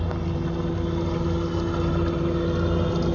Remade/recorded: recorded